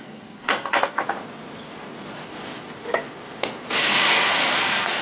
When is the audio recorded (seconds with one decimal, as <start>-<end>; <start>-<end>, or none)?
1.0-3.8